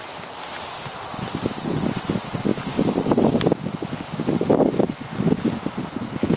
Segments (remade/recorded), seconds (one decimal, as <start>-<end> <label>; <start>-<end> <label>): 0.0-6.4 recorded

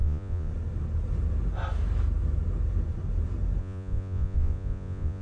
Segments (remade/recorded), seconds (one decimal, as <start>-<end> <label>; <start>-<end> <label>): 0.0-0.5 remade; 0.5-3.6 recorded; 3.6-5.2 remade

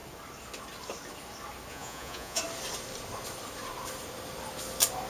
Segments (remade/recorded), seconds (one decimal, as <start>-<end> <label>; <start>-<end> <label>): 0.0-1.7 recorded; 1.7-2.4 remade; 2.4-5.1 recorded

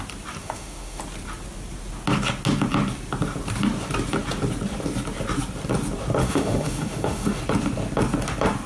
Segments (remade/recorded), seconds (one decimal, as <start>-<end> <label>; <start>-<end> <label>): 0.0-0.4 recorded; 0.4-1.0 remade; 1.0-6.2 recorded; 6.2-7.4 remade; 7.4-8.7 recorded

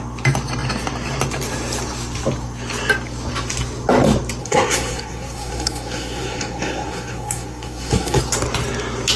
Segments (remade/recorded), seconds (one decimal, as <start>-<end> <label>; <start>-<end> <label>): 0.0-4.4 recorded; 4.4-8.2 remade; 8.2-9.2 recorded